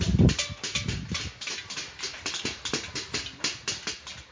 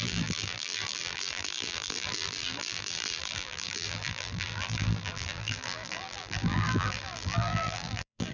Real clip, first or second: first